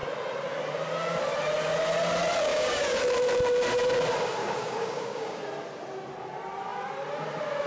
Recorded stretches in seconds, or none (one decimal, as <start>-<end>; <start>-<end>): 0.0-2.5; 3.0-4.4; 5.4-7.7